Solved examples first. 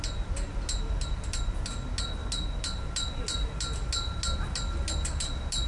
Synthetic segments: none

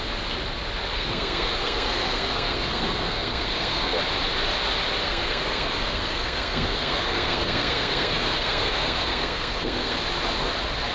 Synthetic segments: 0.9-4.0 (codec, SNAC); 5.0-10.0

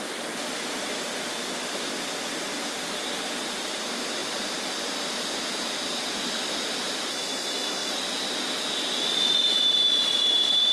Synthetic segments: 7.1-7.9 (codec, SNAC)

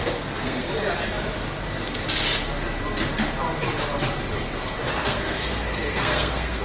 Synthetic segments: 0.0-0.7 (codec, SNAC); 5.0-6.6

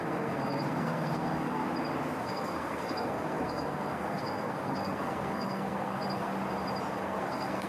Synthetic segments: 0.0-1.6 (codec, SNAC); 2.2-6.3; 6.9-7.7

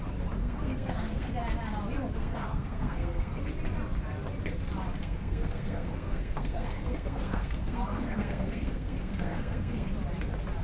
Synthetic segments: 0.4-1.3 (codec, SNAC); 2.2-3.4; 5.0-9.9

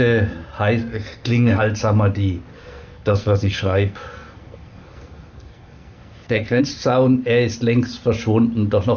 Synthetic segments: 0.8-1.6 (codec, SNAC); 2.5-6.6